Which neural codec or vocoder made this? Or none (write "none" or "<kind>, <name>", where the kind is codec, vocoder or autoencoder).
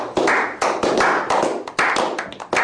none